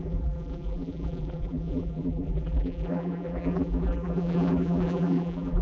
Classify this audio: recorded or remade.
remade